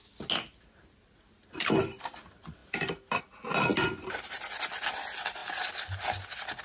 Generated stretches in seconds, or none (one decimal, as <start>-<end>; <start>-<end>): none